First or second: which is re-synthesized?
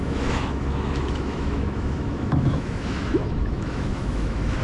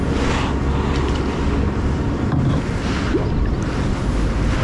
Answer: first